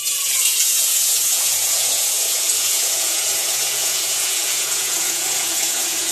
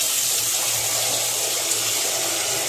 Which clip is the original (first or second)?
second